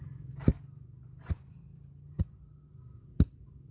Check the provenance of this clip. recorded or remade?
recorded